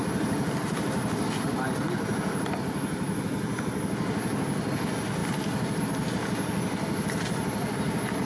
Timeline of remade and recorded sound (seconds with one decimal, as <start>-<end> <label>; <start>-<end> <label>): 0.0-8.2 recorded